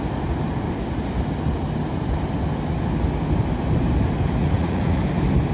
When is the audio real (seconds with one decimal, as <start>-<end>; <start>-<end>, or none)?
0.0-4.4; 5.0-5.5